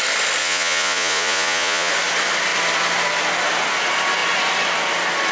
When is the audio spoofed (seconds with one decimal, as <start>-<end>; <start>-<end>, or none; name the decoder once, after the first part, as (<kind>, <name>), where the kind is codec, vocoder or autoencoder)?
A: 0.4-1.9 (vocoder, Vocos)